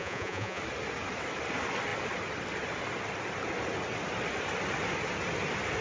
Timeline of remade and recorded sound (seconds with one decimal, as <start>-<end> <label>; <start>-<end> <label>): 0.0-0.6 remade; 0.6-5.8 recorded